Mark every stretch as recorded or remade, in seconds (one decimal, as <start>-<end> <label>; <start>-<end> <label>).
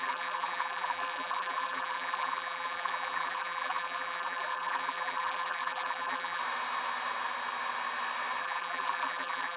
0.0-6.4 remade; 6.4-8.4 recorded; 8.4-9.6 remade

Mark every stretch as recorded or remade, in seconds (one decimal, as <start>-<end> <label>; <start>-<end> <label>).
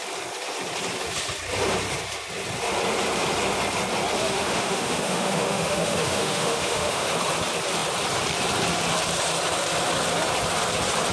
0.0-4.2 recorded; 4.2-7.1 remade; 7.1-11.1 recorded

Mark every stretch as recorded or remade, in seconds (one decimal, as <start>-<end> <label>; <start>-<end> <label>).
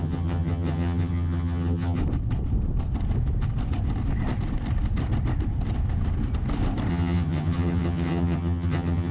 0.0-2.0 remade; 2.0-6.9 recorded; 6.9-9.1 remade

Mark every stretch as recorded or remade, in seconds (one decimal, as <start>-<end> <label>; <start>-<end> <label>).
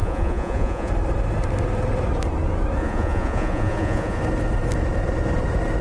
0.0-0.9 remade; 0.9-2.8 recorded; 2.8-4.2 remade; 4.2-5.8 recorded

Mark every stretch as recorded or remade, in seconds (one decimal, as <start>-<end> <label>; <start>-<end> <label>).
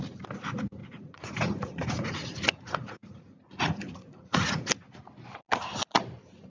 0.0-0.8 recorded; 0.8-4.7 remade; 4.7-6.5 recorded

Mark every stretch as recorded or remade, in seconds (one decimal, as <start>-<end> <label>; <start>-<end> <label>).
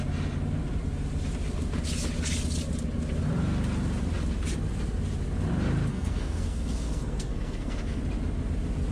0.0-5.9 recorded; 5.9-8.0 remade; 8.0-8.9 recorded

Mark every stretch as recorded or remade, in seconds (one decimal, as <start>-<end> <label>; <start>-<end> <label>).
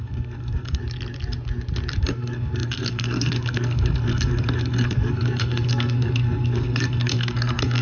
0.0-0.8 remade; 0.8-2.0 recorded; 2.0-7.8 remade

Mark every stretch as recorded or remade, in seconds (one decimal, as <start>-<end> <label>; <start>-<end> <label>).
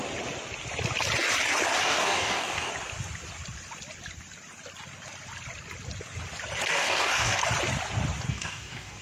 0.0-1.8 recorded; 1.8-2.7 remade; 2.7-6.7 recorded; 6.7-7.4 remade; 7.4-8.3 recorded; 8.3-9.0 remade